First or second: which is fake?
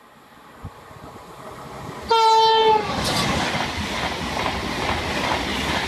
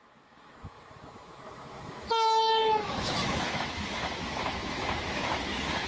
second